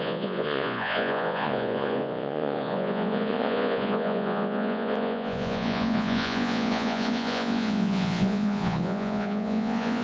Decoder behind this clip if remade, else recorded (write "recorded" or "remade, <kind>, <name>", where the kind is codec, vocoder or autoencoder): remade, vocoder, Vocos